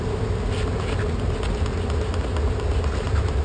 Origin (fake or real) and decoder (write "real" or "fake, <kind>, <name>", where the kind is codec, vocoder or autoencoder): real